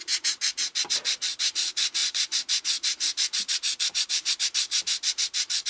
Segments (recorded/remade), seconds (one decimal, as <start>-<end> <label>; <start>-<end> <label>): 0.0-1.4 recorded; 1.4-5.7 remade